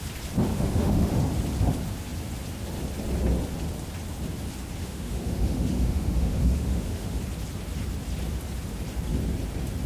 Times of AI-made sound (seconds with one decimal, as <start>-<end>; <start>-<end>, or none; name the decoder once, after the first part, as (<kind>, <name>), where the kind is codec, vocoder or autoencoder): 0.5-1.2 (autoencoder, DAC-VAE); 4.8-7.2